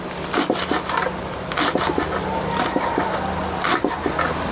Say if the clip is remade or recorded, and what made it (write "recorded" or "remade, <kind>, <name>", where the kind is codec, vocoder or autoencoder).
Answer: recorded